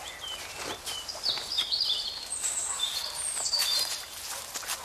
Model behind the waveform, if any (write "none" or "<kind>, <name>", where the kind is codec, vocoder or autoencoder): vocoder, BigVGAN v2